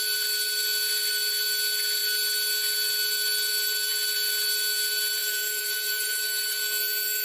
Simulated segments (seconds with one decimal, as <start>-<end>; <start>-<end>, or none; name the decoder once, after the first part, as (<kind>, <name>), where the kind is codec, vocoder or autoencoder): 5.2-6.2 (vocoder, Vocos)